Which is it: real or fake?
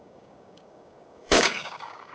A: fake